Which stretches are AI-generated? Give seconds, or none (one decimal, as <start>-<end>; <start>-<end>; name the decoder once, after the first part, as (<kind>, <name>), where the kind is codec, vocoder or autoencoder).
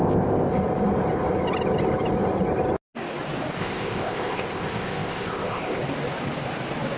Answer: 0.0-0.5 (codec, ZipCodec); 3.6-5.8